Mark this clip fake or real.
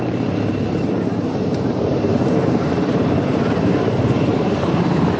fake